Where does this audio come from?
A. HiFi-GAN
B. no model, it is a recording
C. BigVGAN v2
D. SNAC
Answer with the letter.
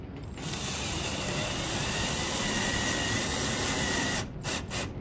C